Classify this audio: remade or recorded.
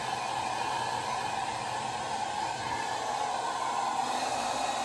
recorded